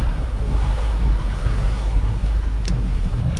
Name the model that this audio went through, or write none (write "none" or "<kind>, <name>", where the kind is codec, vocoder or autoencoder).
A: codec, SNAC